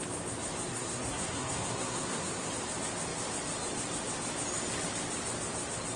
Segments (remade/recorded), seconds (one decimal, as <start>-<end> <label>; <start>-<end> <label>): 0.0-0.7 recorded; 0.7-2.5 remade; 2.5-6.0 recorded